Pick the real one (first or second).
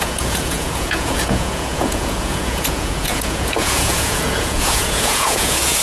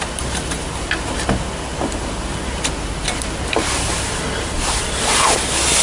second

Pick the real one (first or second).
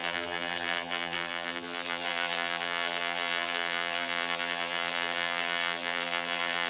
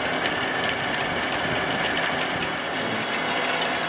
second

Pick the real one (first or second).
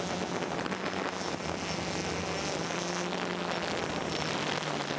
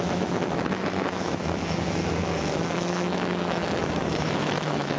first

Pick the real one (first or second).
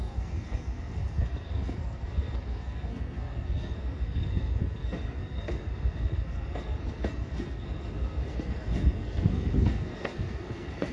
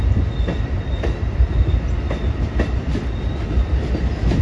second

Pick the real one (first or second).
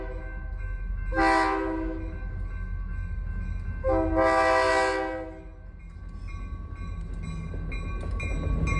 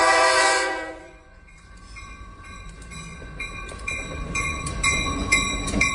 first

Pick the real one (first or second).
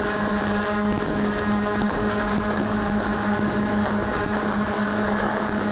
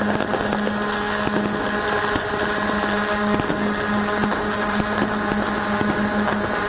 second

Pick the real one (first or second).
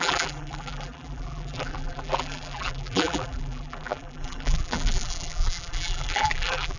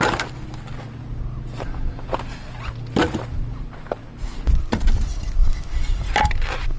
second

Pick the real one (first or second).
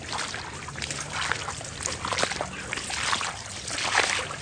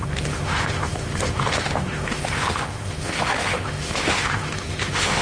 first